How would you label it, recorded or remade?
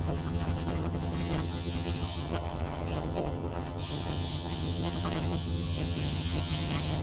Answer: remade